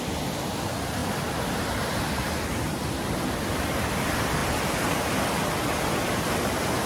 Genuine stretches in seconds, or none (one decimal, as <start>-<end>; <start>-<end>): 0.0-6.9